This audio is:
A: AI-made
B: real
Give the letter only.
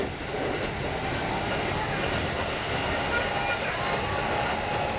B